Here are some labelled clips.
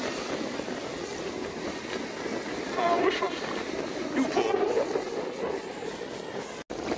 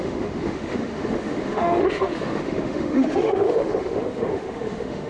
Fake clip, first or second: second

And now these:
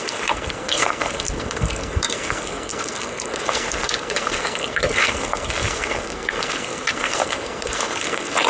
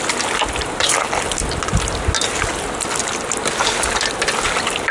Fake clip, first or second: first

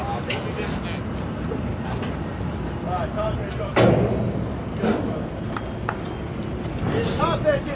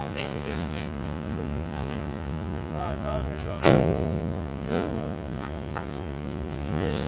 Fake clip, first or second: second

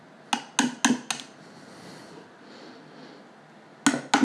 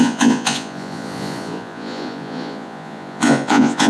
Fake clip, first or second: second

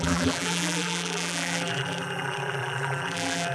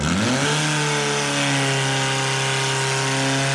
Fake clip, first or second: first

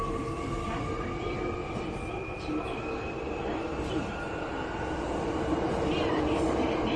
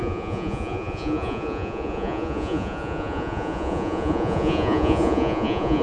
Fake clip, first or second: second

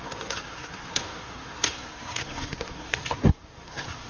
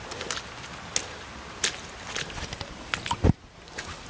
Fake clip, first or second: first